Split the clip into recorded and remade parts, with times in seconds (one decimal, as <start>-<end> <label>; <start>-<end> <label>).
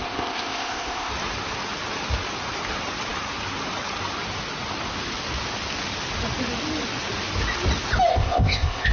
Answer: 0.0-1.1 remade; 1.1-8.1 recorded; 8.1-8.9 remade